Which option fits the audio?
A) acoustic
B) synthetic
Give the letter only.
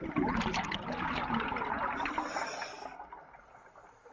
A